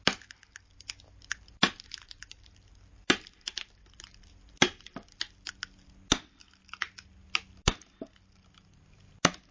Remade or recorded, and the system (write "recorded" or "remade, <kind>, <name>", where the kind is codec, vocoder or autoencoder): recorded